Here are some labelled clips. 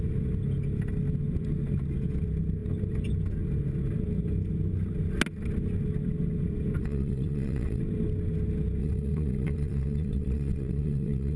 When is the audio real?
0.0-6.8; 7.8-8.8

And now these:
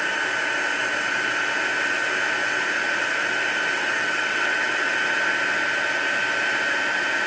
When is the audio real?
0.0-3.7; 4.9-7.3